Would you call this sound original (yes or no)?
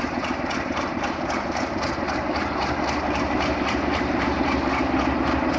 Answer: no